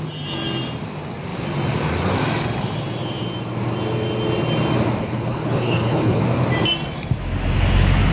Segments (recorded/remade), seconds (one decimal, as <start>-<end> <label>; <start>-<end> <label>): 0.0-5.0 recorded; 5.0-6.2 remade; 6.2-8.1 recorded